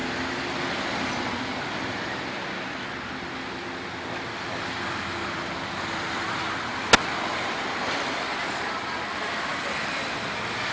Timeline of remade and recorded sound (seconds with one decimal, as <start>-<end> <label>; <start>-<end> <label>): 0.0-10.7 recorded